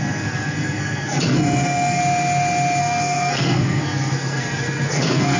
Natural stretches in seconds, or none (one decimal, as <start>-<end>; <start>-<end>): 2.0-2.8